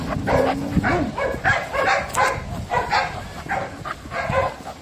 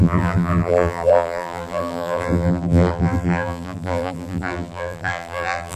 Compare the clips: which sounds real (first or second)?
first